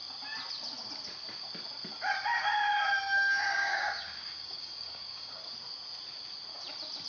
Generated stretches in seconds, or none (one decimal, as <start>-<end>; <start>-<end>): 3.5-5.4